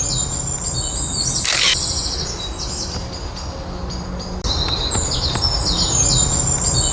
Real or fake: real